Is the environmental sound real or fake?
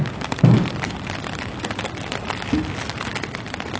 real